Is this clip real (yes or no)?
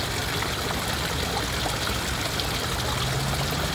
yes